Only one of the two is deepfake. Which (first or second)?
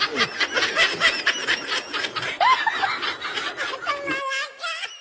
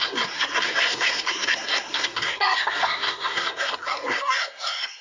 second